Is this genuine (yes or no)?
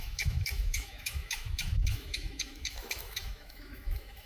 no